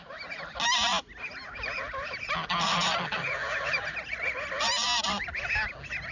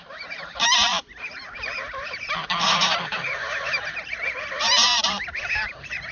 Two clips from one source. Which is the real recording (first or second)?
first